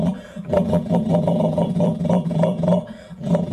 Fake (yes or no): yes